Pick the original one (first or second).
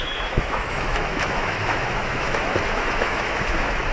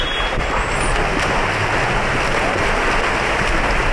second